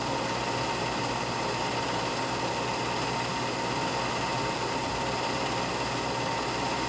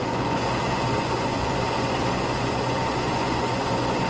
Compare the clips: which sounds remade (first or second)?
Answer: second